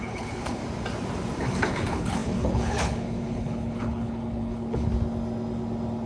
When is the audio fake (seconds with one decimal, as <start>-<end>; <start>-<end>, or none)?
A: 0.0-0.6; 1.4-4.9